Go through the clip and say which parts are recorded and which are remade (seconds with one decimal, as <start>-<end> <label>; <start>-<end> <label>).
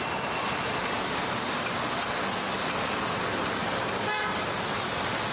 0.0-5.3 recorded